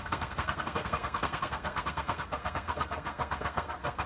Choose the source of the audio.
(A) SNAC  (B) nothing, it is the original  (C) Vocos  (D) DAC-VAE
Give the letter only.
A